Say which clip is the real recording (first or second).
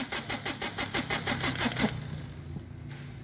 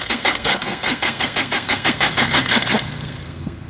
first